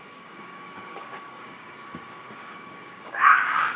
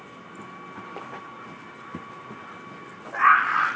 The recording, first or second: second